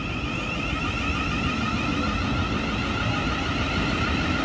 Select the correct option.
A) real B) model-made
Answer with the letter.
A